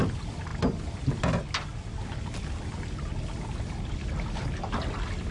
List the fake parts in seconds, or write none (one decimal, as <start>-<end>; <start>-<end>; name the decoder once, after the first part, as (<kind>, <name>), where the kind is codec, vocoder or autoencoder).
none